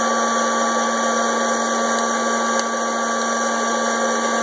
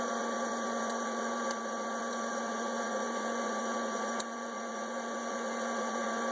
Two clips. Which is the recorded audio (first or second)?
first